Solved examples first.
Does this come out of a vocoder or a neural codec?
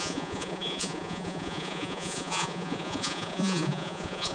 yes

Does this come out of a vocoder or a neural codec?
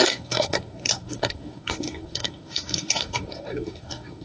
yes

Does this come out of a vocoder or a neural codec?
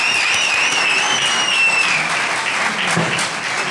no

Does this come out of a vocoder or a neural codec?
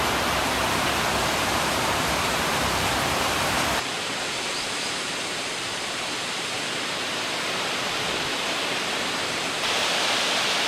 yes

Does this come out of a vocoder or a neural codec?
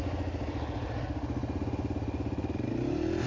no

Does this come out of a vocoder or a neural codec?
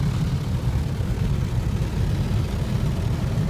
no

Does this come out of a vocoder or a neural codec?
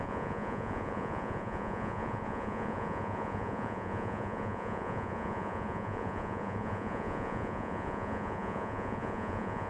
yes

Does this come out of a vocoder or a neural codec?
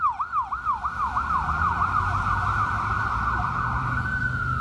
yes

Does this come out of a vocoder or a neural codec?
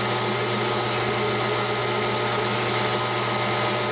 no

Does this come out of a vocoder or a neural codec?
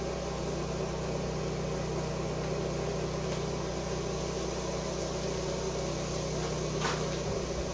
no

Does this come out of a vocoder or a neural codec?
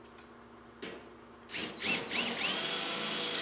no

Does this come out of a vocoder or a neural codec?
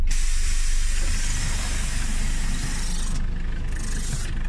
no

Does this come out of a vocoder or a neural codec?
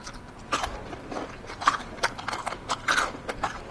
yes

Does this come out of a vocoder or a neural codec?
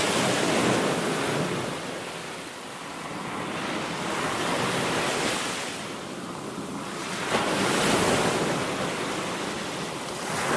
no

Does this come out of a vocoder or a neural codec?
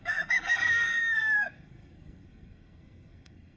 yes